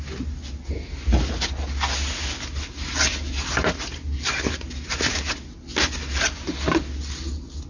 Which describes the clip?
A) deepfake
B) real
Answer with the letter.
B